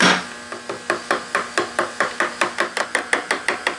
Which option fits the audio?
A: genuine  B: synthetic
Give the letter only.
A